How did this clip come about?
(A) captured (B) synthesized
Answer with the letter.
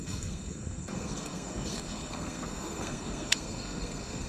B